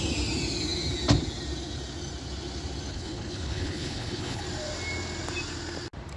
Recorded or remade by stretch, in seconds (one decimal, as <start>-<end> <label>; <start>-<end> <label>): 0.0-2.9 recorded; 2.9-4.4 remade; 4.4-6.2 recorded